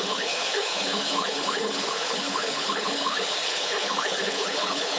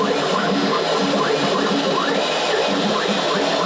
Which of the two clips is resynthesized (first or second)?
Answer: first